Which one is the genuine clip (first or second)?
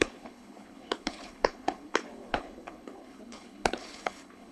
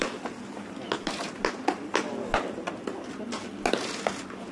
second